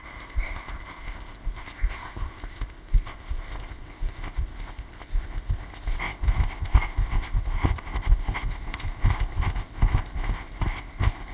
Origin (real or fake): fake